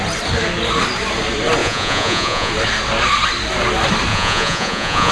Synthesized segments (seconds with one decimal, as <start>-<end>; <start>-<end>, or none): 1.6-2.5; 4.1-5.1